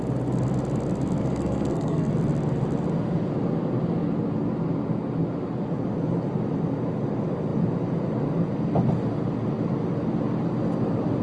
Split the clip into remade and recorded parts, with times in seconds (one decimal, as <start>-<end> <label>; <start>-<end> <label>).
0.0-1.2 recorded; 1.2-2.1 remade; 2.1-11.2 recorded